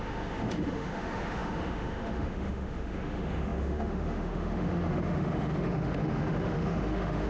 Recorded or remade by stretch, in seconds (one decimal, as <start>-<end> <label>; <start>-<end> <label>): 0.0-7.3 remade

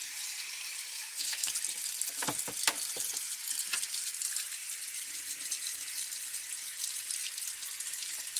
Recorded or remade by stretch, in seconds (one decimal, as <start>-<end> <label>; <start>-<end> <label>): 0.0-0.9 recorded; 0.9-1.5 remade; 1.5-8.4 recorded